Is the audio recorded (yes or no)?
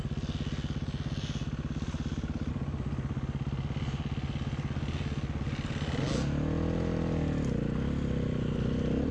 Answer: yes